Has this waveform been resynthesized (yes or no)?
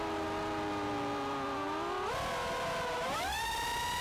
no